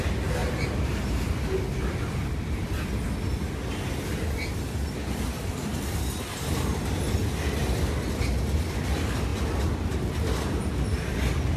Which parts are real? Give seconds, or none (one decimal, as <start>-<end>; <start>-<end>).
0.0-0.4; 1.1-11.6